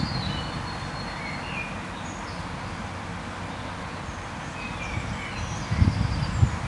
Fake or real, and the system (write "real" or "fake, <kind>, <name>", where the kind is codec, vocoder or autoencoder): real